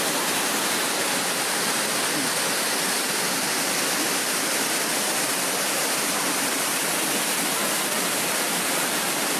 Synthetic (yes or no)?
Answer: no